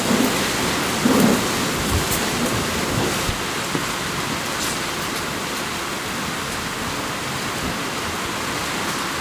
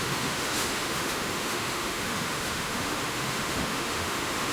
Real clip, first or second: first